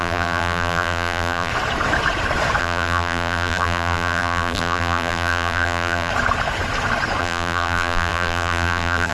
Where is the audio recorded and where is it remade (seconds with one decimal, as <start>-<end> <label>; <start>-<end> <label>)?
0.0-1.5 remade; 1.5-2.6 recorded; 2.6-6.1 remade; 6.1-7.2 recorded; 7.2-9.1 remade